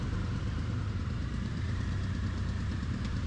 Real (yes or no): no